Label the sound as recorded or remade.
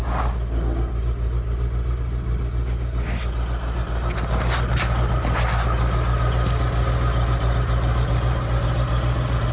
recorded